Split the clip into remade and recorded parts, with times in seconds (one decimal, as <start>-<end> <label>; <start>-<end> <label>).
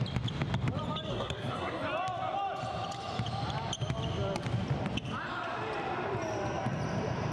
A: 0.0-1.1 recorded; 1.1-1.8 remade; 1.8-7.3 recorded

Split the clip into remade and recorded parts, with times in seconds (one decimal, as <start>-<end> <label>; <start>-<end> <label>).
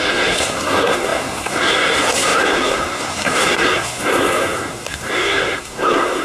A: 0.0-6.2 remade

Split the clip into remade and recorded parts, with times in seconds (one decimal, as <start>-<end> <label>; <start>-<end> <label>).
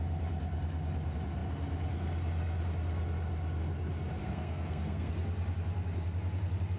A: 0.0-4.2 recorded; 4.2-5.1 remade; 5.1-6.8 recorded